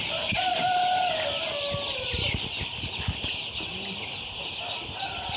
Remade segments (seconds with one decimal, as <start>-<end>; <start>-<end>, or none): none